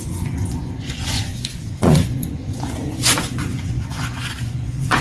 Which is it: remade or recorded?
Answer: remade